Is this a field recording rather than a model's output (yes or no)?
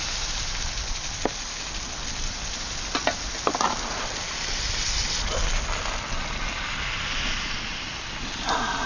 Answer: yes